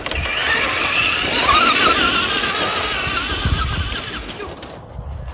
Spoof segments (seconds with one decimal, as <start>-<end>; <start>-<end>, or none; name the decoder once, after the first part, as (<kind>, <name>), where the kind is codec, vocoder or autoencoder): 0.4-1.5 (vocoder, BigVGAN v2); 3.6-4.6